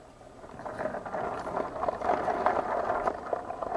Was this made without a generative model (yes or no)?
yes